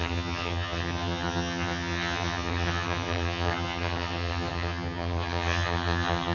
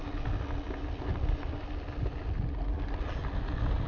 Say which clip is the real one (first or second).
second